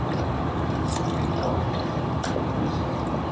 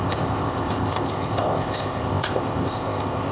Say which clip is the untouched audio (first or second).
first